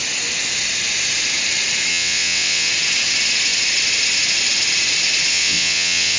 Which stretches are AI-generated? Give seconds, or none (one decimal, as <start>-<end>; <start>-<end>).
1.9-2.7; 5.3-6.2

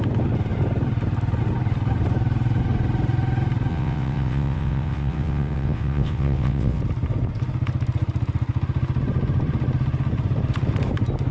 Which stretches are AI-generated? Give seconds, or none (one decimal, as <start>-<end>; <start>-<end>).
3.7-6.8